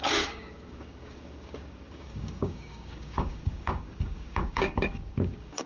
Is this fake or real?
fake